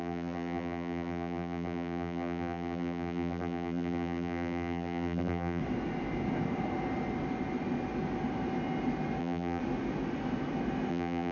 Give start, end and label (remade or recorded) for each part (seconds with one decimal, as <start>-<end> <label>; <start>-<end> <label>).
0.0-5.6 remade; 5.6-9.2 recorded; 9.2-9.6 remade; 9.6-10.9 recorded; 10.9-11.3 remade